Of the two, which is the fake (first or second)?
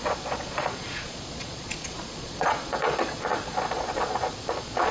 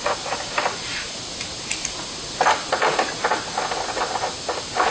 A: first